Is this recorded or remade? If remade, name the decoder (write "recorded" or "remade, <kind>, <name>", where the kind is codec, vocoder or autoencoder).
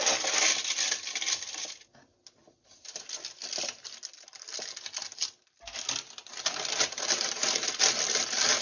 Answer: recorded